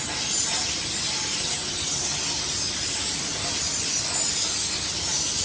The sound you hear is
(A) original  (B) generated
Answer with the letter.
A